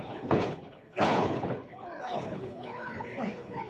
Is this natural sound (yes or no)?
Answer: no